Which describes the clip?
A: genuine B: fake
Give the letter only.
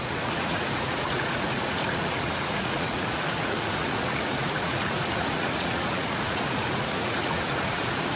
B